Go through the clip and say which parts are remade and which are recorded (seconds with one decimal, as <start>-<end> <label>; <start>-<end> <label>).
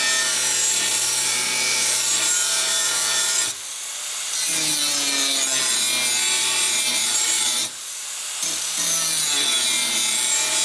0.0-0.9 recorded; 0.9-3.4 remade; 3.4-6.4 recorded; 6.4-7.9 remade; 7.9-10.6 recorded